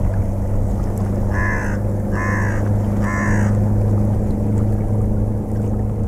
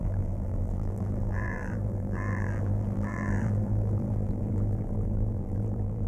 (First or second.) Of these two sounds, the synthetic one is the second